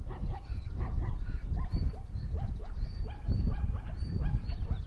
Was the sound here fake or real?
real